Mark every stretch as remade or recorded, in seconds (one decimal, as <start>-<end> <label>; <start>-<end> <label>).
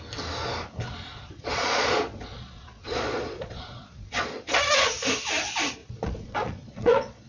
0.0-1.1 recorded; 1.1-4.6 remade; 4.6-5.8 recorded; 5.8-7.3 remade